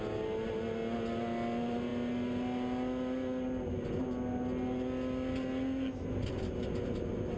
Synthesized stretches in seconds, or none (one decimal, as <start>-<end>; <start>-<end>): none